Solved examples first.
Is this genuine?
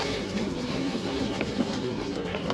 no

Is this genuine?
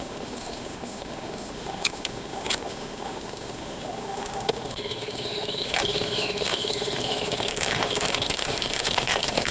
no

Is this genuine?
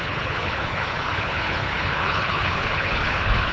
no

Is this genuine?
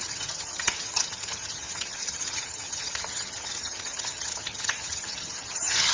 no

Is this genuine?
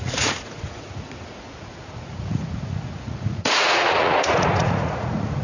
no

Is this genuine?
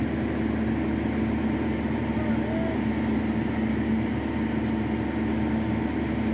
yes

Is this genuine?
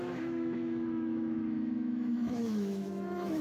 no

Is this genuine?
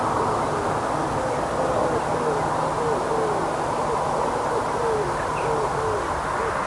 yes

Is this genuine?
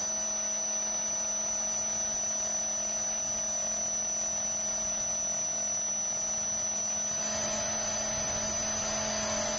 yes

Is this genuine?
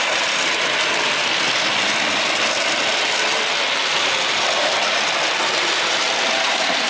yes